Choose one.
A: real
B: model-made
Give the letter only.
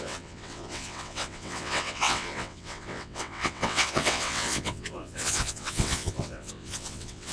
B